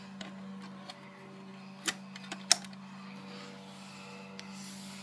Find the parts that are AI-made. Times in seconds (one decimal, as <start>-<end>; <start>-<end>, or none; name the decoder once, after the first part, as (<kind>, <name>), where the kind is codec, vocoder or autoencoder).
none